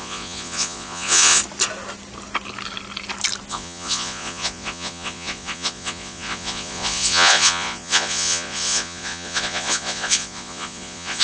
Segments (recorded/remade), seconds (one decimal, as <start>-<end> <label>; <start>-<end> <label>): 0.0-1.4 remade; 1.4-3.5 recorded; 3.5-11.2 remade